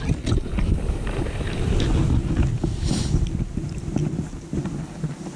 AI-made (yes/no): no